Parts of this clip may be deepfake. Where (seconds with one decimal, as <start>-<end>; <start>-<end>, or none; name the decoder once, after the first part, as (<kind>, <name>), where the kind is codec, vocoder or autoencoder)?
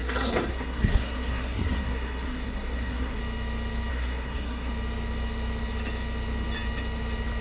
0.0-3.2 (codec, SNAC); 3.9-4.7